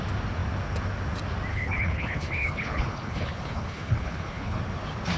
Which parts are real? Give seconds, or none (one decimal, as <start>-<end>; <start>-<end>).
0.0-1.5; 4.6-5.2